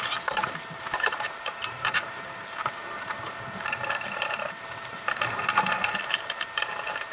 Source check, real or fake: fake